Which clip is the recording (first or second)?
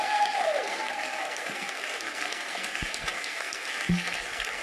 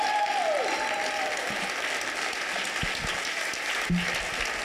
second